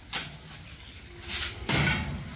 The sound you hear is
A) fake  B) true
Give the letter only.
B